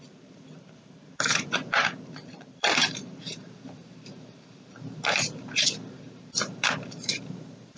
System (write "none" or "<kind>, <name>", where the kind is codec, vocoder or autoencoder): vocoder, BigVGAN v2